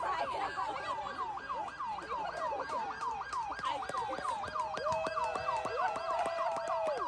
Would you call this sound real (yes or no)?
yes